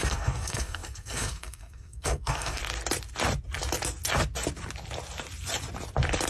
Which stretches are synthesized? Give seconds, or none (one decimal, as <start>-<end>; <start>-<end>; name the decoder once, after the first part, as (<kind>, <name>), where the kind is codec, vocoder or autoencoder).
0.0-2.6 (codec, SNAC)